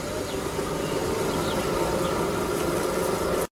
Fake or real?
real